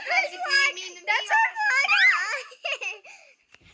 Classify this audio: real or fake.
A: real